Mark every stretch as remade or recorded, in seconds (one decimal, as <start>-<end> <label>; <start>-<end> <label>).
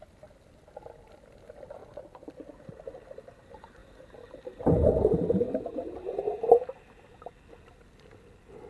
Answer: 0.0-8.7 recorded